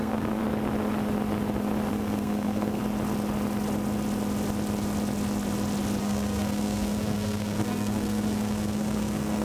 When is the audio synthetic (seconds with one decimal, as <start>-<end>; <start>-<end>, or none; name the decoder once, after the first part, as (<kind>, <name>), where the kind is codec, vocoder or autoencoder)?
0.0-0.4 (codec, SNAC); 1.9-2.8; 6.0-9.4

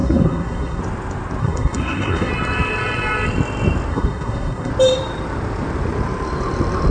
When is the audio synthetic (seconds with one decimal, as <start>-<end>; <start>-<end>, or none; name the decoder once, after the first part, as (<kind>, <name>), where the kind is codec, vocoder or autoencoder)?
0.0-0.8 (codec, SNAC); 1.4-2.3; 3.9-4.7

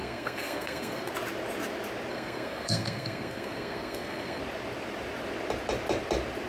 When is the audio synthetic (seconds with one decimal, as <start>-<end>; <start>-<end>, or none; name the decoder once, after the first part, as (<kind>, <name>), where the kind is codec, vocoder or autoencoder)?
0.0-1.1 (codec, SNAC); 2.1-4.4

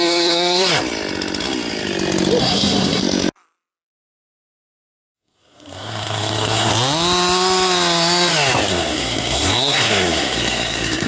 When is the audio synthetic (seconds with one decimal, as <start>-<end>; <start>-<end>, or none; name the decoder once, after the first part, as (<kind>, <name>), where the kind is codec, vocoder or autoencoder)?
0.0-0.7 (codec, SNAC); 2.4-3.0; 4.2-6.7; 8.7-11.1

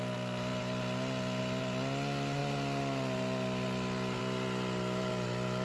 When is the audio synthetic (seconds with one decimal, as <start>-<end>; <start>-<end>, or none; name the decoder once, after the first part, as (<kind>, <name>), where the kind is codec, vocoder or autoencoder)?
none

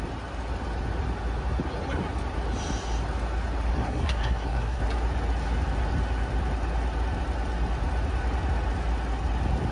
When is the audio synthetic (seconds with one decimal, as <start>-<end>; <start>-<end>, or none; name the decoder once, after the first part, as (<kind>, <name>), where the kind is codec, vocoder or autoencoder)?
3.7-4.8 (codec, SNAC)

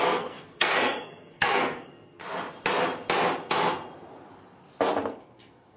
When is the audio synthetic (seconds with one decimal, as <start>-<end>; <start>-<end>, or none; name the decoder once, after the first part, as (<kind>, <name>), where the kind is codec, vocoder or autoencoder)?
0.0-2.2 (codec, SNAC); 5.0-5.8